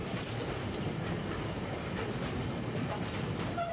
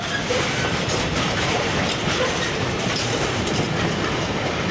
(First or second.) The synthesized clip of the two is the second